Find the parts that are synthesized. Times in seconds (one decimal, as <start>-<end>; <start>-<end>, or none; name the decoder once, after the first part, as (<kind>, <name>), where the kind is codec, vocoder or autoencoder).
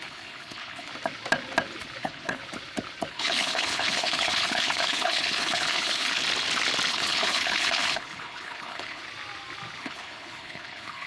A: 0.0-0.9 (codec, HILCodec); 2.0-2.4; 3.1-6.2; 6.9-9.0; 9.8-11.1